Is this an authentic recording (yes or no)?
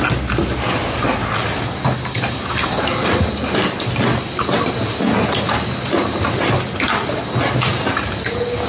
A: yes